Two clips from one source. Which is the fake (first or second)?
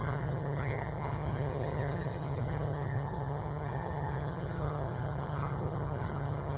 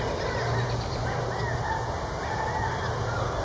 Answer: first